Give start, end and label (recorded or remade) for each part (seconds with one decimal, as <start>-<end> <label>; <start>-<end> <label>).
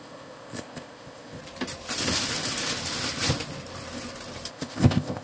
0.0-1.4 remade; 1.4-4.5 recorded; 4.5-5.2 remade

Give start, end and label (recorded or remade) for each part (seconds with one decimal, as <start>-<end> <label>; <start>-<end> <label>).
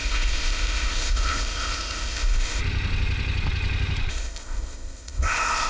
0.0-2.6 remade; 2.6-4.1 recorded; 4.1-5.7 remade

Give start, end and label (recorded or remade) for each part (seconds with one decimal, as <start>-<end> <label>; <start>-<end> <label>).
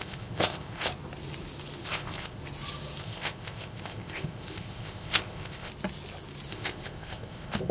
0.0-0.9 remade; 0.9-1.8 recorded; 1.8-2.4 remade; 2.4-3.0 recorded; 3.0-5.7 remade; 5.7-6.5 recorded; 6.5-7.7 remade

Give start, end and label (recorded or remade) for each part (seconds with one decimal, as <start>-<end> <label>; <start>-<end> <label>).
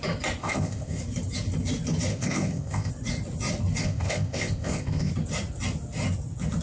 0.0-0.4 recorded; 0.4-1.0 remade; 1.0-2.1 recorded; 2.1-2.9 remade; 2.9-3.8 recorded; 3.8-5.1 remade; 5.1-6.6 recorded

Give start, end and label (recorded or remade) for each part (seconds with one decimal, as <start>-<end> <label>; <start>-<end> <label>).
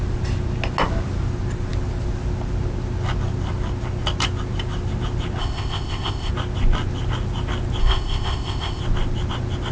0.0-5.4 recorded; 5.4-6.3 remade; 6.3-7.8 recorded; 7.8-8.8 remade; 8.8-9.7 recorded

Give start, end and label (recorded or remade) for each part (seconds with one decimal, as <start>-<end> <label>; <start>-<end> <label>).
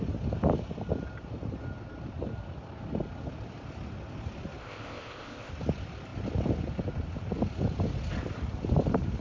0.0-4.6 recorded; 4.6-5.5 remade; 5.5-9.2 recorded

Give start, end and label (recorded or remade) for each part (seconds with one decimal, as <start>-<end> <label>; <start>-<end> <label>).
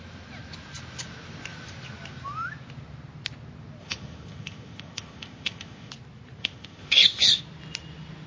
0.0-3.8 recorded; 3.8-5.9 remade; 5.9-6.4 recorded; 6.4-7.4 remade; 7.4-8.3 recorded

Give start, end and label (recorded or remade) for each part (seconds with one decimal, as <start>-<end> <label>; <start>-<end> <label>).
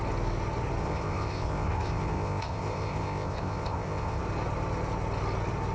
0.0-0.8 recorded; 0.8-4.2 remade; 4.2-5.7 recorded